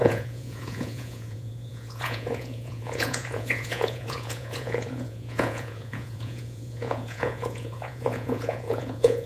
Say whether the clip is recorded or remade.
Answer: remade